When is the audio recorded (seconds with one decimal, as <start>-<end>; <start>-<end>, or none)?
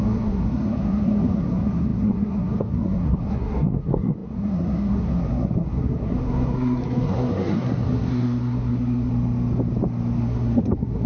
9.1-10.2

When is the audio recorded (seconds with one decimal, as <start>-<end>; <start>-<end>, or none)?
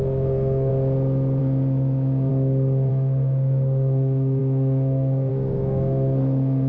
0.7-1.4; 2.3-2.9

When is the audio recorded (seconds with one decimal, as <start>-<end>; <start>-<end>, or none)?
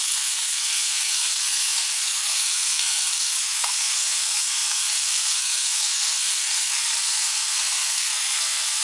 none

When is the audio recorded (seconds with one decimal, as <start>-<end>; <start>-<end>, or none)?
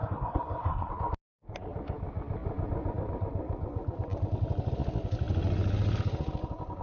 0.9-6.8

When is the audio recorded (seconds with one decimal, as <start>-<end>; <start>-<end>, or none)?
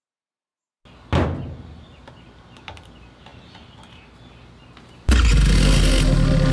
0.0-6.5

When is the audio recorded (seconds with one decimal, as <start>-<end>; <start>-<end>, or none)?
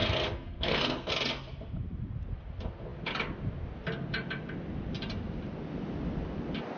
1.1-6.8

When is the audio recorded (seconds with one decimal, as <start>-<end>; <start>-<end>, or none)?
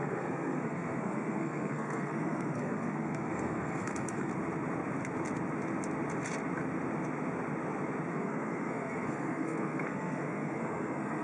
4.3-8.1